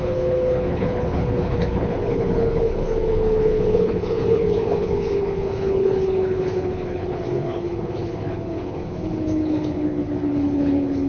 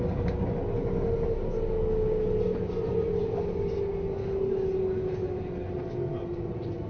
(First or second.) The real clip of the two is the second